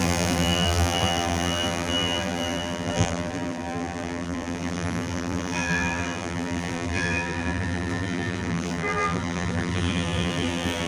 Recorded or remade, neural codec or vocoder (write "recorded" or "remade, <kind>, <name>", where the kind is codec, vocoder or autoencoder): remade, vocoder, BigVGAN v2